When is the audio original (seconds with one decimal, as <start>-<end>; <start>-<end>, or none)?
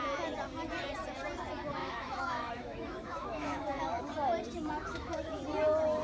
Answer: 0.0-1.8; 4.0-4.8; 5.4-6.0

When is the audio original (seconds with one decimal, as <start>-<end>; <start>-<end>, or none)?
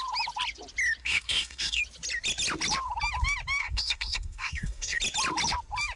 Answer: 0.0-1.0; 1.8-3.6; 5.0-6.0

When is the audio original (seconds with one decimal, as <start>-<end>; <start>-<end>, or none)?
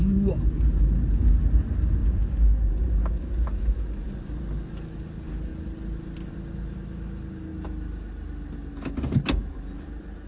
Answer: 0.0-10.3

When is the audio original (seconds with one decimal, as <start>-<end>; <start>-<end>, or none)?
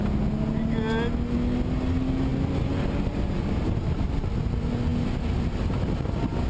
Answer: 0.0-2.3; 3.6-6.5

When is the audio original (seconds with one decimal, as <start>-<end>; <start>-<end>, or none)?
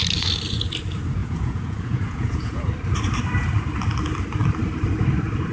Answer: 0.0-1.2; 2.7-5.5